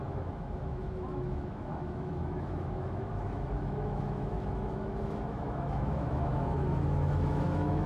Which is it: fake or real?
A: fake